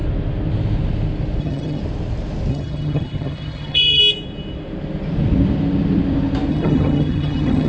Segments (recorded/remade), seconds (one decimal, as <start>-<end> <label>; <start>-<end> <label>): 0.0-1.4 recorded; 1.4-1.8 remade; 1.8-2.5 recorded; 2.5-4.0 remade; 4.0-6.5 recorded; 6.5-7.7 remade